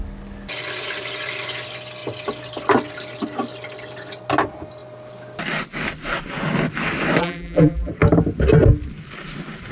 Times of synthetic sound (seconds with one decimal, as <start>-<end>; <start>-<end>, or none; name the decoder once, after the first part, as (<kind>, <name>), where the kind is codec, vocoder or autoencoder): 7.2-7.9 (vocoder, BigVGAN v2)